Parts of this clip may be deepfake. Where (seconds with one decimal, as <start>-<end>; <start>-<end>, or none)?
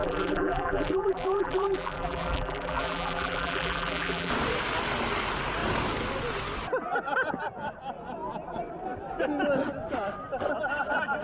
0.0-4.3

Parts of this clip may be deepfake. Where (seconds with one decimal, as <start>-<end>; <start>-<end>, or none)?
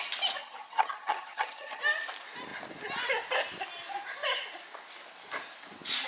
0.4-1.8